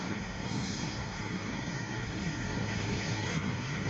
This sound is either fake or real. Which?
fake